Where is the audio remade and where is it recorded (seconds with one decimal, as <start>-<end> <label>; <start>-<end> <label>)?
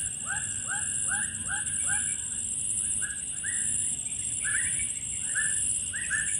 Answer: 0.0-3.8 recorded; 3.8-5.2 remade; 5.2-6.4 recorded